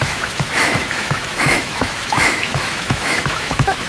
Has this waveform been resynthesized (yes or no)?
yes